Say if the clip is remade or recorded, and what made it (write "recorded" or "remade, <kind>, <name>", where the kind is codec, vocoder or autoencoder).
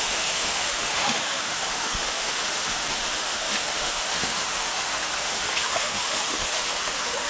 remade, autoencoder, DAC-VAE